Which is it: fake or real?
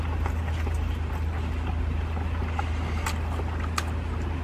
real